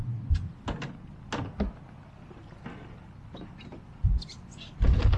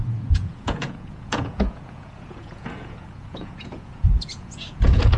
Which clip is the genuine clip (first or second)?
first